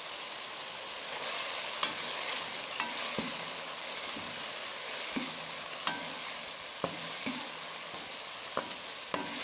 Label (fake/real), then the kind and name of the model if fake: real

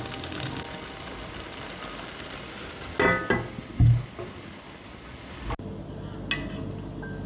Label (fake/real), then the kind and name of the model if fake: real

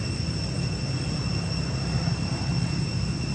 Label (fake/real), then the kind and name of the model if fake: real